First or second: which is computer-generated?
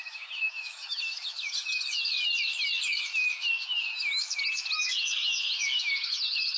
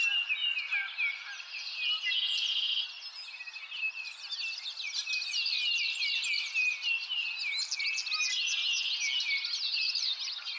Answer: first